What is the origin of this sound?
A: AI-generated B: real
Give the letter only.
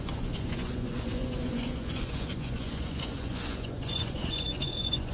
A